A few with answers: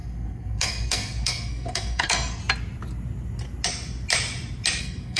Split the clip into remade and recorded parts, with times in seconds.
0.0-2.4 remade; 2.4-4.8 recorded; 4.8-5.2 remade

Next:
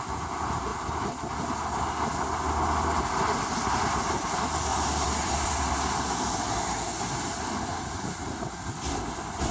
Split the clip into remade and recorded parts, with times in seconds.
0.0-4.7 recorded; 4.7-5.7 remade; 5.7-7.7 recorded; 7.7-9.5 remade

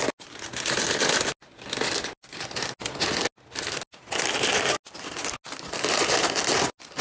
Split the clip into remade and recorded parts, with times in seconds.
0.0-7.0 recorded

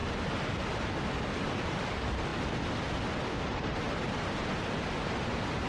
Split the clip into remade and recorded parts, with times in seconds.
0.0-5.7 recorded

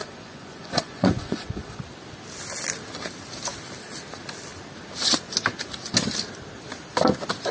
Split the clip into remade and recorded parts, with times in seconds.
0.0-1.8 remade; 1.8-7.5 recorded

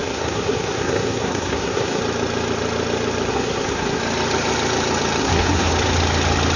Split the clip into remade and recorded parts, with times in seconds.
0.0-2.0 remade; 2.0-3.3 recorded; 3.3-4.0 remade; 4.0-5.2 recorded; 5.2-5.7 remade; 5.7-6.6 recorded